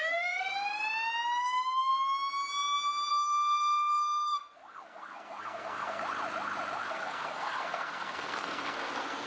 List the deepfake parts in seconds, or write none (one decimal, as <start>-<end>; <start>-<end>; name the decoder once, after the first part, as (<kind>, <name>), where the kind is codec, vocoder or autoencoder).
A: 0.0-0.5 (codec, SNAC); 1.4-1.9; 3.1-6.0; 6.9-9.3